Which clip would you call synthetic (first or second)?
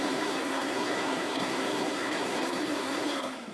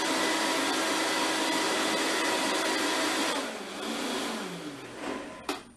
first